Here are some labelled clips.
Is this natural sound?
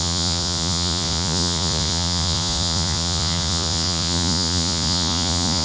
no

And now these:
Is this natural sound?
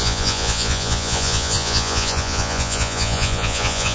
no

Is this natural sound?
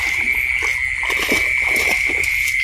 yes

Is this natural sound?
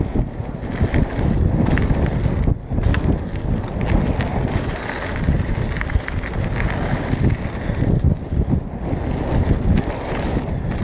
yes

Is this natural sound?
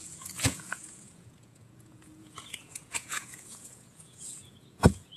no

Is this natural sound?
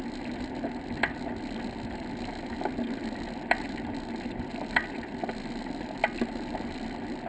yes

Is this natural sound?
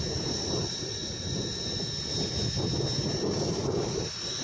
yes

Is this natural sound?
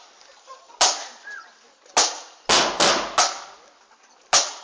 yes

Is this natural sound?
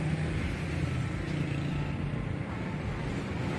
yes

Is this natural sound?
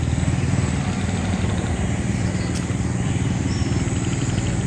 yes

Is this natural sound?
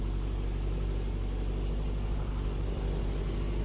yes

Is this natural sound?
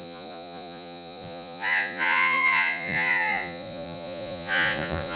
no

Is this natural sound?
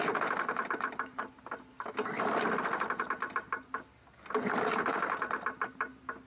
yes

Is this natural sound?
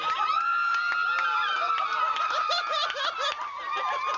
yes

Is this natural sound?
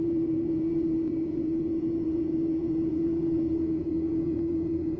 no